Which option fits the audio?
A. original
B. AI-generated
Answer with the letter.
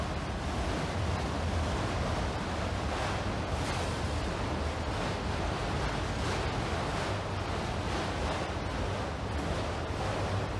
A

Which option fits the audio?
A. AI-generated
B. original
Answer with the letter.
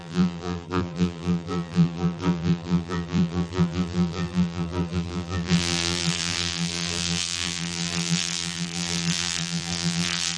A